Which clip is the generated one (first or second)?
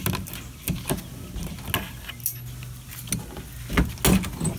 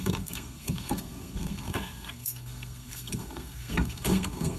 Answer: second